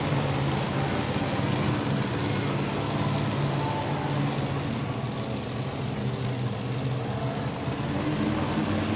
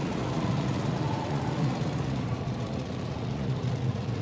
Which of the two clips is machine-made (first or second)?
second